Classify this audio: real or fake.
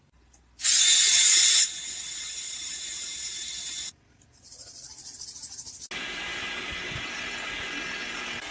real